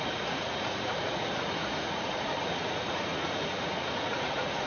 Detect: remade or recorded remade